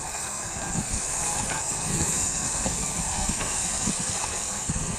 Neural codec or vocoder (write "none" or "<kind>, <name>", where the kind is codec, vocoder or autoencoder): codec, SNAC